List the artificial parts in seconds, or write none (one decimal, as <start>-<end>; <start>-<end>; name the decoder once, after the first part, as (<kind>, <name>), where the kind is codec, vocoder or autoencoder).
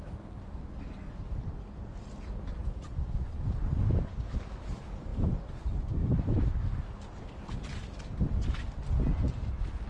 none